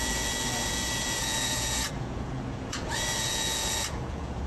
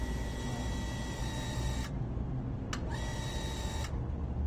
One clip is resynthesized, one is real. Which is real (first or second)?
second